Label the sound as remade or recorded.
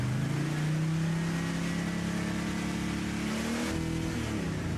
recorded